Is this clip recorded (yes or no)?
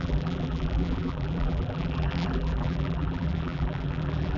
no